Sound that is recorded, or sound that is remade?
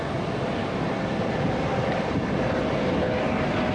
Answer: recorded